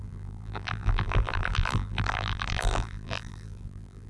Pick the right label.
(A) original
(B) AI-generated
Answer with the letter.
B